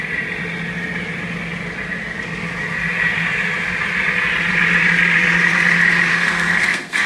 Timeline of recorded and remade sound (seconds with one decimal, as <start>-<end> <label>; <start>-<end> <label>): 0.0-6.1 recorded; 6.1-7.1 remade